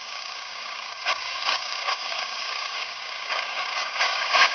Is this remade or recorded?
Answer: remade